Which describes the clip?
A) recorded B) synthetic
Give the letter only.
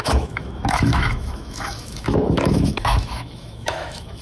B